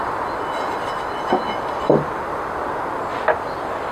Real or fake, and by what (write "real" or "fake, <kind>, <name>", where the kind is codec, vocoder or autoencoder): real